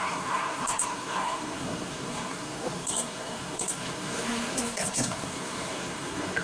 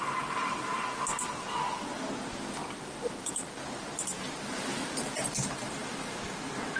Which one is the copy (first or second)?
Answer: first